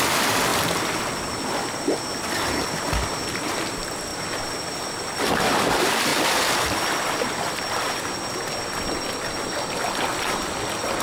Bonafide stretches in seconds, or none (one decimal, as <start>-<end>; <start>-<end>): 0.0-6.1; 7.8-11.0